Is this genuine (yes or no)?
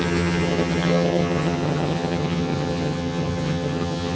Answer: no